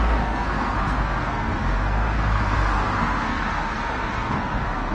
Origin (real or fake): fake